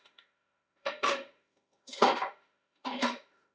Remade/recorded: remade